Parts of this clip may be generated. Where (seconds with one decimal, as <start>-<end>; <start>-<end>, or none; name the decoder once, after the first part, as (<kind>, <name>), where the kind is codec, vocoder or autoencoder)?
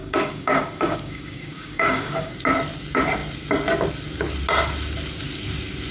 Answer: 0.0-2.3 (codec, DAC)